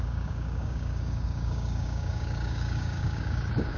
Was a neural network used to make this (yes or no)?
yes